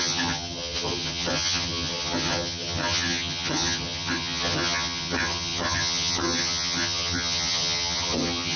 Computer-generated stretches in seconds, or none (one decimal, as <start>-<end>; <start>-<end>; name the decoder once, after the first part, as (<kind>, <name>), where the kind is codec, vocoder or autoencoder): 0.0-8.6 (vocoder, HiFi-GAN)